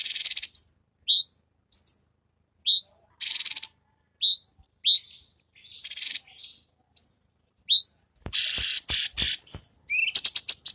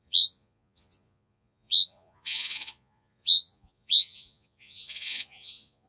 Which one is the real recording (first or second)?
first